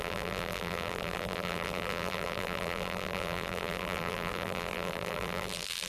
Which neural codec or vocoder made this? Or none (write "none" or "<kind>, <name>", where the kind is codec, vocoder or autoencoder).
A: vocoder, BigVGAN v2